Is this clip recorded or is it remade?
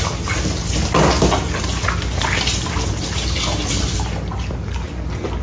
recorded